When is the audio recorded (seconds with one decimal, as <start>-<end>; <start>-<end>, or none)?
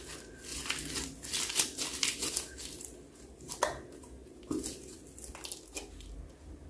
0.0-6.7